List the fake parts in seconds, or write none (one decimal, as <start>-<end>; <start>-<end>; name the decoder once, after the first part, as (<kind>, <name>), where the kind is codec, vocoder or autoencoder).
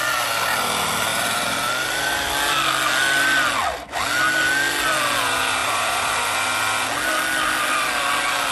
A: 1.1-2.3 (vocoder, BigVGAN v2); 5.6-6.1